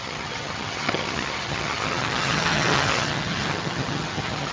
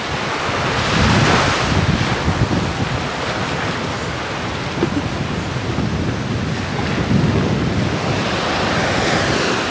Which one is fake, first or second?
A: first